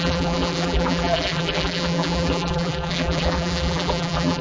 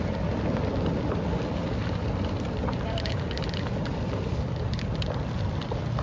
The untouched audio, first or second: second